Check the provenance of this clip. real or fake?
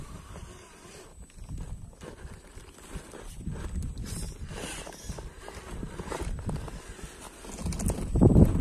real